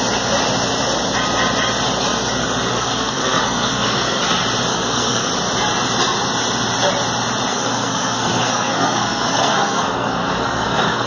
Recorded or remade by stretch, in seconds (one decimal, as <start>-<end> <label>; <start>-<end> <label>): 0.0-2.7 recorded; 2.7-4.2 remade; 4.2-4.7 recorded; 4.7-5.3 remade; 5.3-7.5 recorded; 7.5-11.1 remade